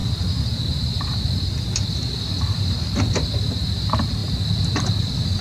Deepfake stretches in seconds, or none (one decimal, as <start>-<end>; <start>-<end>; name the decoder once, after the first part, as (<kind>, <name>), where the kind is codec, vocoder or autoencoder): none